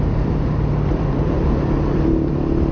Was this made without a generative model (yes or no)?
yes